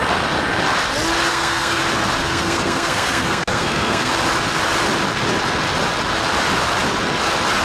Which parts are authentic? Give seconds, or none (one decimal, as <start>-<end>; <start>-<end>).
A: 0.0-1.3; 1.8-2.2; 4.1-7.6

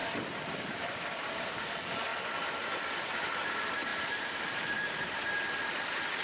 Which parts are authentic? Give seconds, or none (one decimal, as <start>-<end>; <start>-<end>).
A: 0.0-3.9; 5.2-6.2

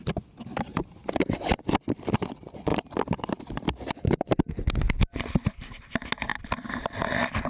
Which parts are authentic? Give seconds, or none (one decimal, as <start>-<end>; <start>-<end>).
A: 0.0-0.7; 1.2-2.7; 4.2-6.3; 7.1-7.5

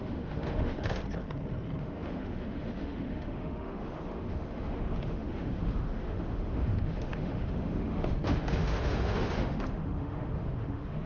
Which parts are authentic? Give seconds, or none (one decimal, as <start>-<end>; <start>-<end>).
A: 1.0-1.8

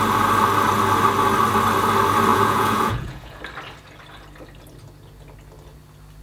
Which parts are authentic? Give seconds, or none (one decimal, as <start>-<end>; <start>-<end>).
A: 0.0-2.3; 3.4-6.2

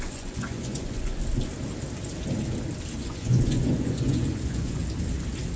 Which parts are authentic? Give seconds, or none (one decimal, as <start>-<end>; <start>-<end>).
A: 1.2-3.0; 4.8-5.6

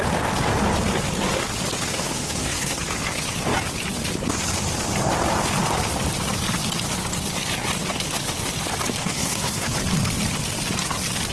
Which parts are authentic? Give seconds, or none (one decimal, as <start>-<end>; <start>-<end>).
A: 0.0-1.9; 2.8-9.0; 9.7-11.3